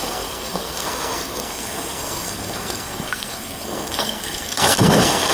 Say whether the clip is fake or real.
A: fake